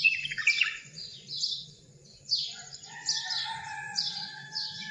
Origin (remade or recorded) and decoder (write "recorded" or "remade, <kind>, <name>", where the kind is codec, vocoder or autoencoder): remade, vocoder, Vocos